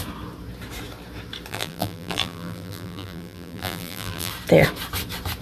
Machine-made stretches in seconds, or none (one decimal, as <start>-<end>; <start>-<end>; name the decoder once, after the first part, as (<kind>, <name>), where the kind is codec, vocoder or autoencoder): 1.5-4.3 (vocoder, BigVGAN v2)

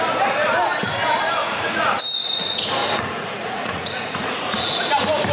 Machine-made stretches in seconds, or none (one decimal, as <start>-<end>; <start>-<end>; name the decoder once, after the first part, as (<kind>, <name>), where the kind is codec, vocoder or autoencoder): 1.4-2.0 (vocoder, Vocos); 2.8-4.8

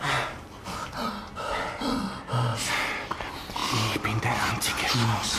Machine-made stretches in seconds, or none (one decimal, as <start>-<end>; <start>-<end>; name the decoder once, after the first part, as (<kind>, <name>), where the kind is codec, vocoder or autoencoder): none

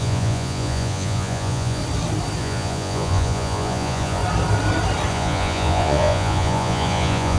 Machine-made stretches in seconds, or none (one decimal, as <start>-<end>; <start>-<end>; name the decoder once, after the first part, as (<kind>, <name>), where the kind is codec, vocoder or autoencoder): 0.0-1.8 (vocoder, Vocos); 2.4-4.2; 5.1-7.4